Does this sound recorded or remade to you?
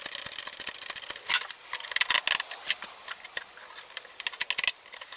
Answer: recorded